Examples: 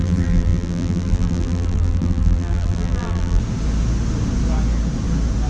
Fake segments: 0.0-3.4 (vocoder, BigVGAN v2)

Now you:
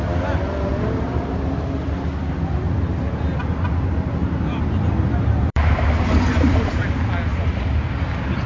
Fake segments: 0.7-1.5 (vocoder, BigVGAN v2); 4.2-6.8

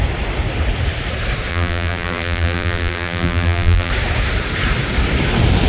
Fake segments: 1.5-3.9 (vocoder, BigVGAN v2)